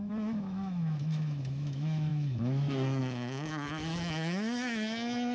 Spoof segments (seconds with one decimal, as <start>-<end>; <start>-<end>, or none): 0.0-5.3